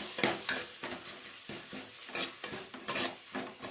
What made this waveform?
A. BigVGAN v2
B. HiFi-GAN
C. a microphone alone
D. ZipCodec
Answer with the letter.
C